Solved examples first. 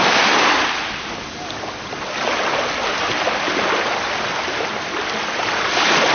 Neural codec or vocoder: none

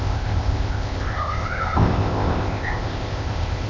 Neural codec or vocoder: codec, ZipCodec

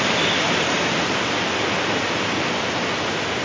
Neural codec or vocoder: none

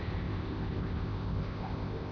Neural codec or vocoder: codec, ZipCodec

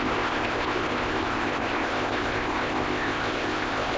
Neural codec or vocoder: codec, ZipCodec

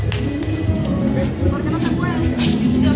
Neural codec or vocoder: none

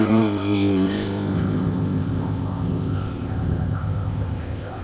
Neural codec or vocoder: codec, ZipCodec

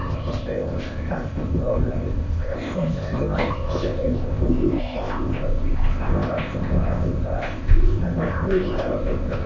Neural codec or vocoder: codec, ZipCodec